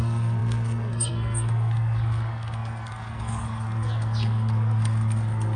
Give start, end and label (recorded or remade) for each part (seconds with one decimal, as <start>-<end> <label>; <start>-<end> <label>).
0.0-5.6 remade